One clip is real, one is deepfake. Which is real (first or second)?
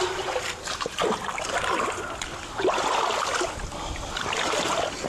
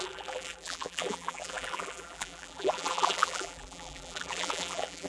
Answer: first